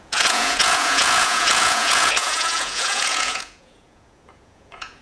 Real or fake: fake